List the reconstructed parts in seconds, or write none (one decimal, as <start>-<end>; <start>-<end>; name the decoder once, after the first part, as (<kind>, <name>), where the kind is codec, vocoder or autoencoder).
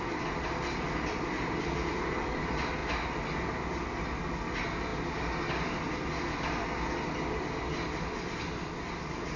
none